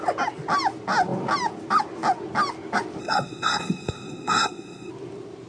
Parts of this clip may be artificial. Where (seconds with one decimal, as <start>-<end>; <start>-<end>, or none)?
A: 3.0-4.9